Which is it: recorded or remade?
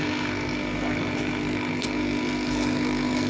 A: remade